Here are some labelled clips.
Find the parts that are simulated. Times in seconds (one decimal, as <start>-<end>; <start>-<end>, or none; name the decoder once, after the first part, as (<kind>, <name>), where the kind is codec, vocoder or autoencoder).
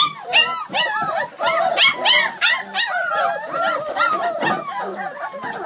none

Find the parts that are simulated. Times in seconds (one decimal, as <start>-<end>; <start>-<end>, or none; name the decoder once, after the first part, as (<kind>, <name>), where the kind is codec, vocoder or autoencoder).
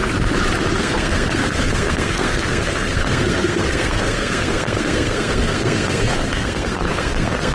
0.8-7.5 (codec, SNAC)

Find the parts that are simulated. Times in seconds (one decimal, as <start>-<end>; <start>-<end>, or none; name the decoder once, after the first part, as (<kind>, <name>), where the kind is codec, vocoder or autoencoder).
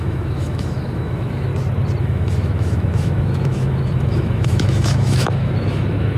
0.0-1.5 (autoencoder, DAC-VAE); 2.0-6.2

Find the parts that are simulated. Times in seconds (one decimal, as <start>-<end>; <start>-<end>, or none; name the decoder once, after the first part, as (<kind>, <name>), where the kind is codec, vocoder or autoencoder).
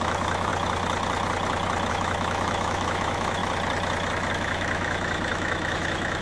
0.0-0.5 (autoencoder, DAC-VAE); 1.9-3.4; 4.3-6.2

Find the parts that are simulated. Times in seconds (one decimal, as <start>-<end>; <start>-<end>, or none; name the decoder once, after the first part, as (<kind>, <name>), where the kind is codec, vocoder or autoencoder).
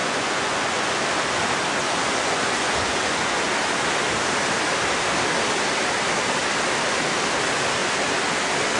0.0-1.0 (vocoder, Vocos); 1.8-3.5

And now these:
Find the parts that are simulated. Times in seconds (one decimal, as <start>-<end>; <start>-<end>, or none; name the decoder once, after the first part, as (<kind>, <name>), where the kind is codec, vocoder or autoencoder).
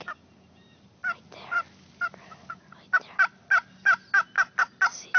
none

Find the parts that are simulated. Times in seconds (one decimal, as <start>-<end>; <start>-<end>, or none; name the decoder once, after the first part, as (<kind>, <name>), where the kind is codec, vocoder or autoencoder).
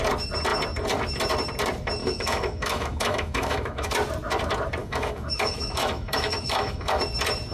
2.0-3.9 (autoencoder, DAC-VAE); 4.8-7.0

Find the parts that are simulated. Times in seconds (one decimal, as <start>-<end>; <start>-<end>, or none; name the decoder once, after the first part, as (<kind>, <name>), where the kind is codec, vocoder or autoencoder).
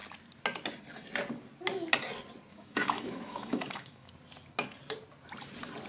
2.5-4.1 (autoencoder, DAC-VAE)